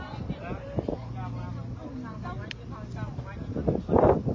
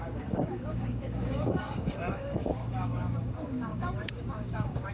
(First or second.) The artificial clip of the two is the second